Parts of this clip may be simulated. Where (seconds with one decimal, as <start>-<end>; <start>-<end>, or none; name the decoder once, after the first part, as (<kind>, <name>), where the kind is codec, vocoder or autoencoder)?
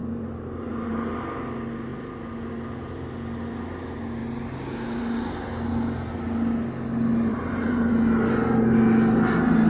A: 0.0-1.2 (vocoder, BigVGAN v2); 7.3-7.9